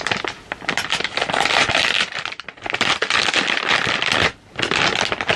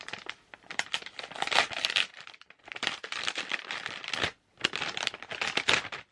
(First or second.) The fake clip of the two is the second